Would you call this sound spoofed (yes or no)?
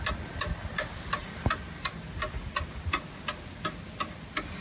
no